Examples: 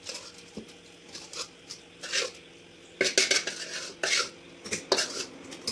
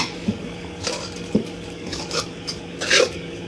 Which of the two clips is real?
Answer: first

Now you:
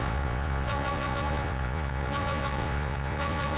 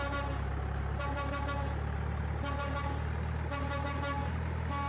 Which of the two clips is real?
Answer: second